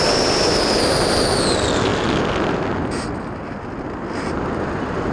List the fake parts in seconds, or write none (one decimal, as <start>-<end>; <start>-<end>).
none